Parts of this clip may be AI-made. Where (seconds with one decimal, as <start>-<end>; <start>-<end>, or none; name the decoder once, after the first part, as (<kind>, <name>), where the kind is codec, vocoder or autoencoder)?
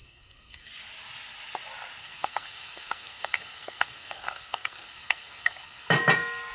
0.0-0.7 (codec, SNAC); 2.0-5.9